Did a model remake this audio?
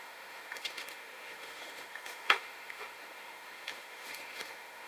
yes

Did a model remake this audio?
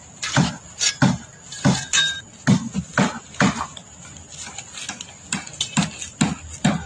no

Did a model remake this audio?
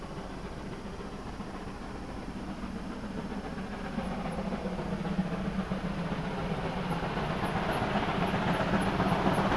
no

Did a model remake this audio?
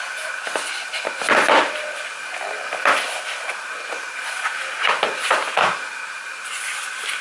no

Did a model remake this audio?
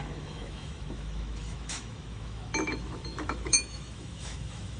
yes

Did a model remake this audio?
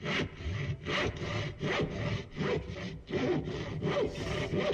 no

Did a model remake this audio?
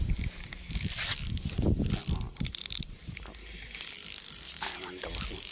no